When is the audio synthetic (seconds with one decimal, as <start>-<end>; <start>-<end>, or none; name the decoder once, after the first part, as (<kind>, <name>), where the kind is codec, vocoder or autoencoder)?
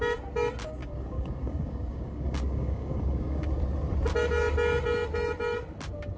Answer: 0.8-3.5 (codec, DAC)